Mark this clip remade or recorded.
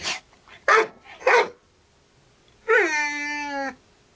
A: recorded